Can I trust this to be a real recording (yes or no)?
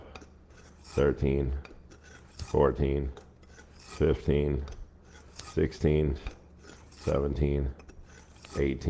yes